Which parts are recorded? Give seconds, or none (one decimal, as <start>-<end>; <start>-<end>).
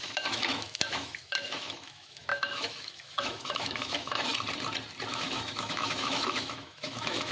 4.3-5.1